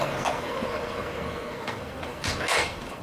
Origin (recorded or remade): remade